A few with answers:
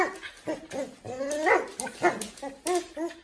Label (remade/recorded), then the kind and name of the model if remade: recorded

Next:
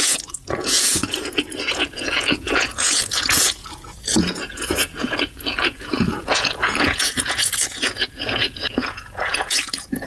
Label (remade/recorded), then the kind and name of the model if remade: remade, vocoder, Vocos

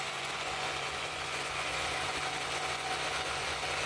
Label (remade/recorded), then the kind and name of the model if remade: remade, vocoder, Vocos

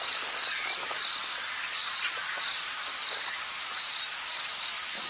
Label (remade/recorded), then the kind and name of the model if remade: recorded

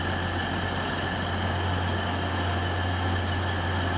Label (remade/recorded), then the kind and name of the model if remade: recorded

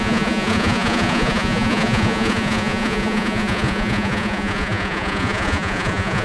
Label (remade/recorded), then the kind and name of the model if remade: remade, vocoder, Vocos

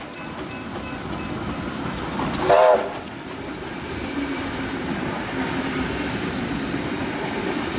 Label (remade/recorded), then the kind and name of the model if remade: recorded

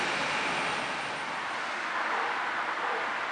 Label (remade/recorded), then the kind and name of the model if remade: recorded